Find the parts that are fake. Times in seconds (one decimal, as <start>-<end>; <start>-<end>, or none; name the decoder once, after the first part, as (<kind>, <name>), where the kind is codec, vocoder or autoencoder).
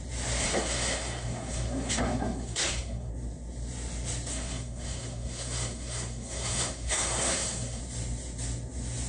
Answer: 0.4-3.1 (codec, SNAC); 4.3-7.8